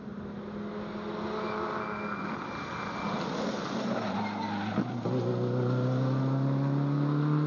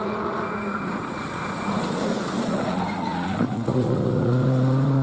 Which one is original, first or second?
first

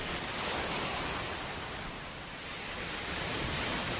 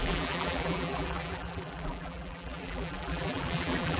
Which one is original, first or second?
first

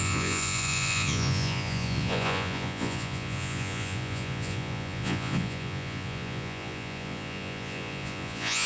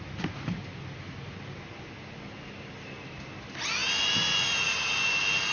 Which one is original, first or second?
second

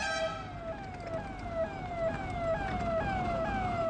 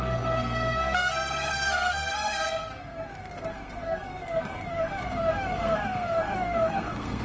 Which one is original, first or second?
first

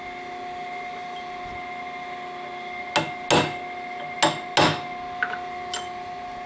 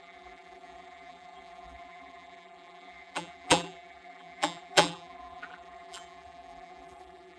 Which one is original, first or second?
first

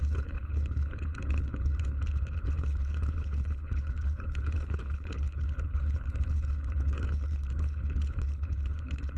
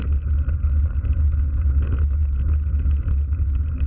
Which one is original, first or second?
second